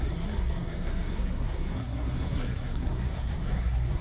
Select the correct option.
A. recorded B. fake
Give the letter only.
B